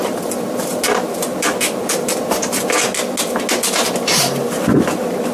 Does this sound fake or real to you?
real